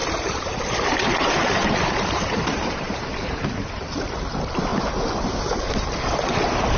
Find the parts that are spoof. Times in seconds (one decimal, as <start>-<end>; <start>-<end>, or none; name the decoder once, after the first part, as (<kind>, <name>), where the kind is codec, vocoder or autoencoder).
0.0-4.1 (vocoder, BigVGAN v2)